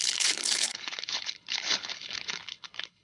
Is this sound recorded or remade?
remade